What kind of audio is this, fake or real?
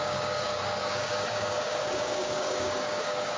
fake